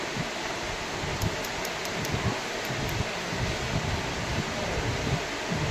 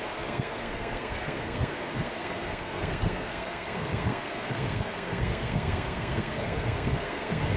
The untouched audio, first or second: first